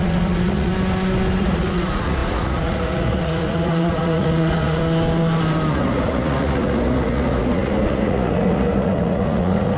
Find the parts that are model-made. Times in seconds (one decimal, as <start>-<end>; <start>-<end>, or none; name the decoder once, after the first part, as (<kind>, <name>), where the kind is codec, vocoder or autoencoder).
0.0-0.7 (vocoder, Vocos); 1.4-4.8; 5.7-9.8